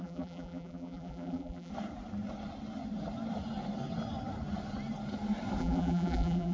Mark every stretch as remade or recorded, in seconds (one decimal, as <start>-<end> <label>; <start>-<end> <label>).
0.0-1.7 remade; 1.7-5.6 recorded; 5.6-6.5 remade